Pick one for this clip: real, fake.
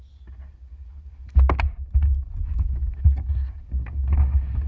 real